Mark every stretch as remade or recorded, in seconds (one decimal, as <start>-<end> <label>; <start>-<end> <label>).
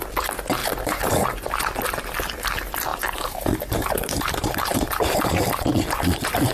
0.0-2.9 recorded; 2.9-5.9 remade; 5.9-6.5 recorded